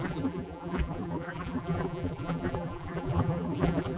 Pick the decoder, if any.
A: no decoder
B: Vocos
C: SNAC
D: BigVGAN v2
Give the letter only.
D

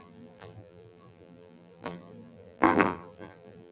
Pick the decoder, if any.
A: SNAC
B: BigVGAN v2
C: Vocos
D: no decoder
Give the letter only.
B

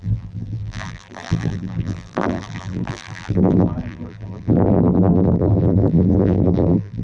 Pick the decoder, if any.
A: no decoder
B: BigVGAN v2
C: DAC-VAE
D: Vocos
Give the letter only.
B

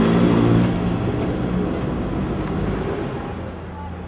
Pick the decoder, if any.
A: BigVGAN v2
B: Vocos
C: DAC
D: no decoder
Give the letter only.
D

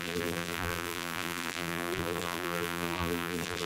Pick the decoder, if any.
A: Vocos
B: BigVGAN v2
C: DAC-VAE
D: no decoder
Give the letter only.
B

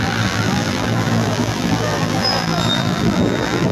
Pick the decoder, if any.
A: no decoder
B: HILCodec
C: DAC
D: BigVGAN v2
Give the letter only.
D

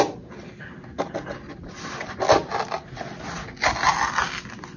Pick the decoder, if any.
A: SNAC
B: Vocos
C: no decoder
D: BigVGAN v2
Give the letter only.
C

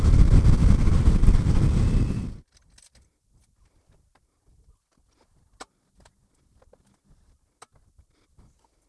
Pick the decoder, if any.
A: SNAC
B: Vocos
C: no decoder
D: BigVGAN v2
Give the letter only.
C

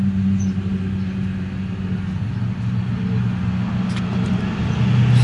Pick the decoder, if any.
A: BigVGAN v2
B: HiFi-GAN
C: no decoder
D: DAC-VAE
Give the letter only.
C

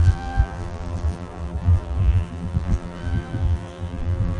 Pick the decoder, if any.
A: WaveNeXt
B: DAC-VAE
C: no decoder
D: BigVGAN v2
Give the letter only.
D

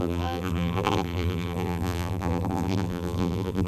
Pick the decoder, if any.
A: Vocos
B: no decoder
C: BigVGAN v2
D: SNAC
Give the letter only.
C